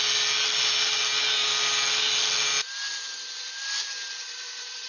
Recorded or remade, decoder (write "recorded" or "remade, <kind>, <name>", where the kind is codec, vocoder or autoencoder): recorded